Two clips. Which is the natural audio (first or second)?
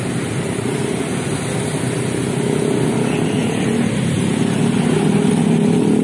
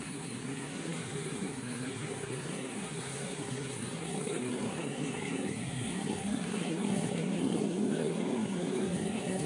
first